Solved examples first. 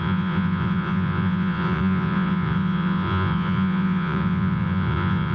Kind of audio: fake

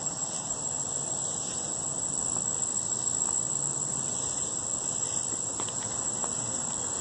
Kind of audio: real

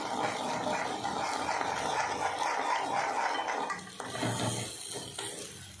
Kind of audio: real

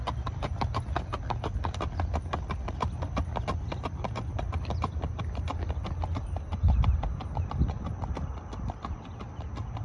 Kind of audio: real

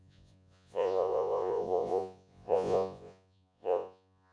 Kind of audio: fake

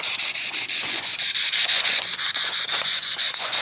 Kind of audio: fake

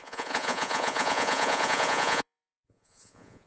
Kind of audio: fake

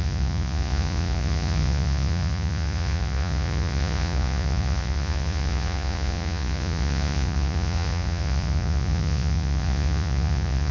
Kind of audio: fake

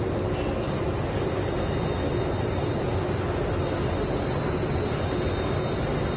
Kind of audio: real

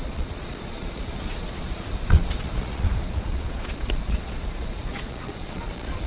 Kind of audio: fake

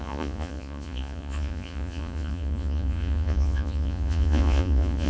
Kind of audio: fake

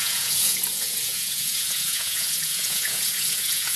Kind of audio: fake